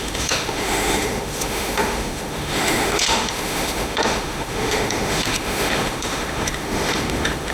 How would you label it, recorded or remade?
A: remade